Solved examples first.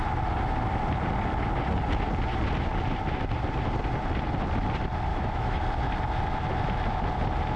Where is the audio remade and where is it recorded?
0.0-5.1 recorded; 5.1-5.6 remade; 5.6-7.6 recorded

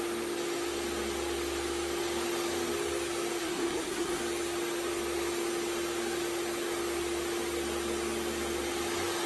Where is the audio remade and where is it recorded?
0.0-3.4 recorded; 3.4-4.2 remade; 4.2-9.3 recorded

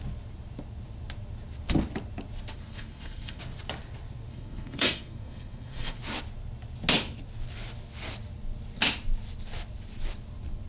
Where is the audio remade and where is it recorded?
0.0-2.6 recorded; 2.6-3.4 remade; 3.4-4.3 recorded; 4.3-6.0 remade; 6.0-10.7 recorded

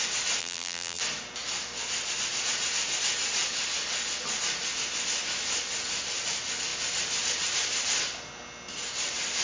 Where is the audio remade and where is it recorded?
0.0-0.4 recorded; 0.4-1.0 remade; 1.0-9.4 recorded

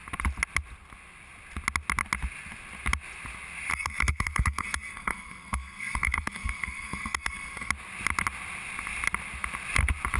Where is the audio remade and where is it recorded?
0.0-3.7 recorded; 3.7-7.7 remade; 7.7-10.2 recorded

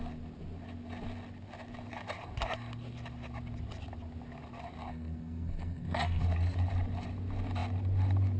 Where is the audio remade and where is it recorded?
0.0-4.9 recorded; 4.9-6.2 remade; 6.2-8.4 recorded

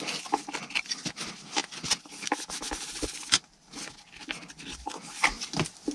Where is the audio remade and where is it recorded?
0.0-5.9 recorded

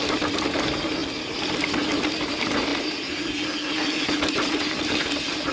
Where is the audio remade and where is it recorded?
0.0-5.5 recorded